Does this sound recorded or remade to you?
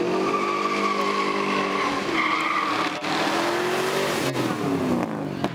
recorded